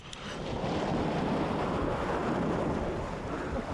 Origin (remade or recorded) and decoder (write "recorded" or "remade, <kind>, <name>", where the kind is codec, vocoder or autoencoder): remade, vocoder, BigVGAN v2